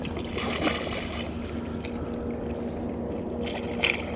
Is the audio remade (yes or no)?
no